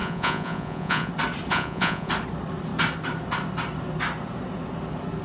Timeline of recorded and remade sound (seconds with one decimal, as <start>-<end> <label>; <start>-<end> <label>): 0.0-1.1 remade; 1.1-1.5 recorded; 1.5-2.1 remade; 2.1-5.2 recorded